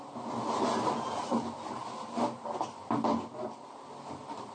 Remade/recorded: recorded